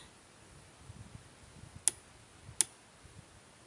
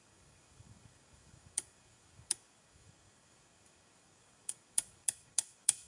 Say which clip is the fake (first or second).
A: second